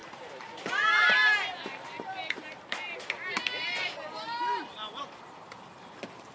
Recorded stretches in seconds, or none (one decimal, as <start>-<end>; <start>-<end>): none